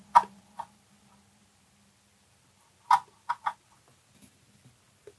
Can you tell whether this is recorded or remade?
recorded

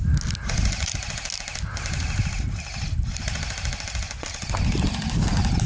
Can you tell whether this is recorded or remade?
recorded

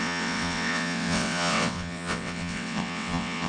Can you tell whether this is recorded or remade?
remade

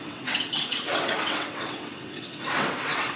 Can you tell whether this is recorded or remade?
remade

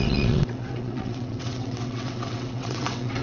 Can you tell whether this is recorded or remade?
remade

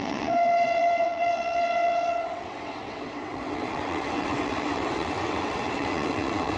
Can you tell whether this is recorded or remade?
remade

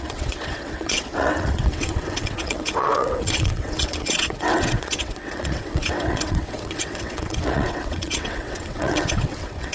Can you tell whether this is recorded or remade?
remade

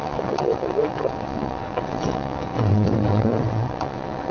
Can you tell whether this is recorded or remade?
remade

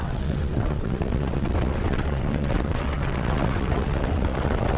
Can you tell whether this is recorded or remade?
remade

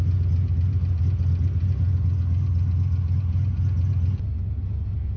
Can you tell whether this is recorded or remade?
recorded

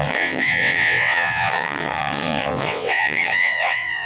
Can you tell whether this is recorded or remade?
remade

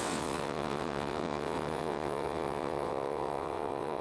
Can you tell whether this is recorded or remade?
remade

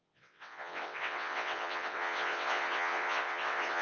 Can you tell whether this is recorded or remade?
remade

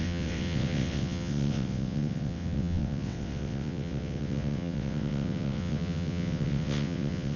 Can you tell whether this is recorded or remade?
remade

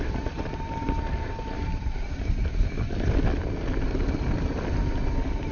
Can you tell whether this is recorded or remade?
recorded